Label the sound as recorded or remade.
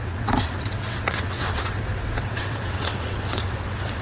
remade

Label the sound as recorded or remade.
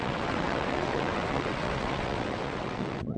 remade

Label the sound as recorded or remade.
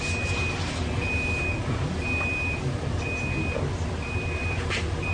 recorded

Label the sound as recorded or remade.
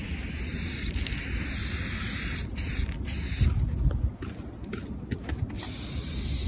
recorded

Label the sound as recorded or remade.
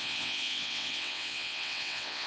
remade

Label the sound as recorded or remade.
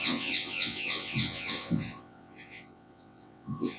remade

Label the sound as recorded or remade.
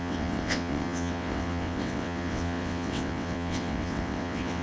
remade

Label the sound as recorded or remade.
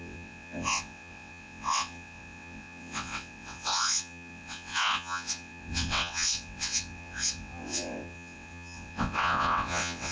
remade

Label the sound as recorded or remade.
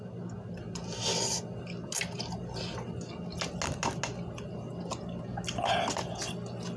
recorded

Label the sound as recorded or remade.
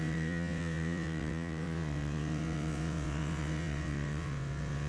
remade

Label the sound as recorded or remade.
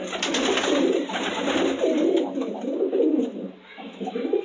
recorded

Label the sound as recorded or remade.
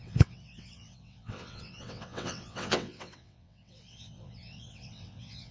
remade